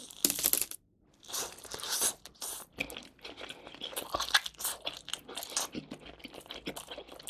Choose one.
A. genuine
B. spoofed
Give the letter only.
A